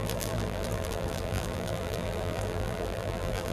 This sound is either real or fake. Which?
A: fake